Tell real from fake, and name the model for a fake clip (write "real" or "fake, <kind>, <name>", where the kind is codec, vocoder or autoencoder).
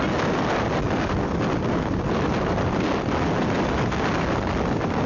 real